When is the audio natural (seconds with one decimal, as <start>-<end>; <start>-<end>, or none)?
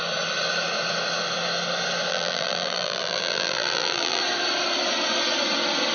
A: 0.0-2.1; 4.2-5.9